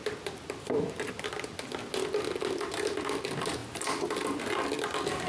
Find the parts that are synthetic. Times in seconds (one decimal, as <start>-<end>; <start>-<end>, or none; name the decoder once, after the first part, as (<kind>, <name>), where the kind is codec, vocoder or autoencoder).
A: none